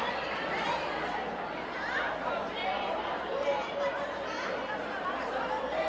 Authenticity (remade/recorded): remade